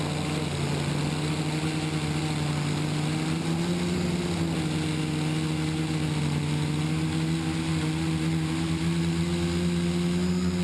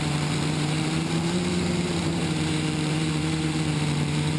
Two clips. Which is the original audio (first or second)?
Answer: first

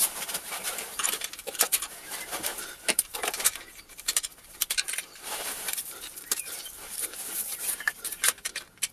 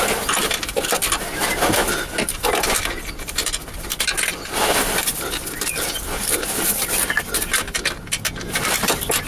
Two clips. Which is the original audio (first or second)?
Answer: second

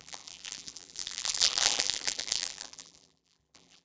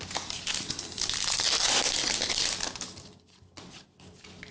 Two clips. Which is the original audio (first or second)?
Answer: second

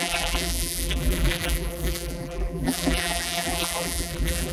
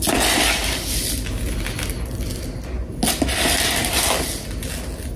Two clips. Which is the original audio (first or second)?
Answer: second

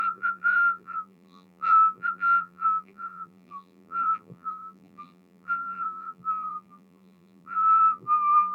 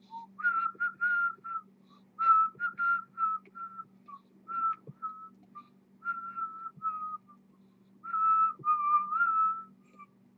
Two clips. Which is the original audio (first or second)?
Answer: second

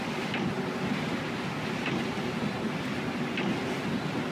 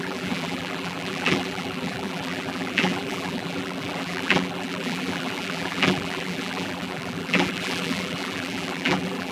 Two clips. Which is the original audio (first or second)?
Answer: first